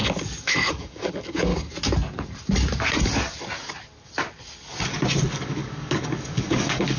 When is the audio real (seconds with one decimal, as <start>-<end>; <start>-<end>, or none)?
1.5-5.3